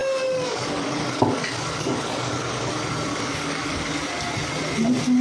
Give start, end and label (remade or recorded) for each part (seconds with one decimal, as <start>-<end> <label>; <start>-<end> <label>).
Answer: 0.0-2.7 remade; 2.7-3.1 recorded; 3.1-3.9 remade; 3.9-5.2 recorded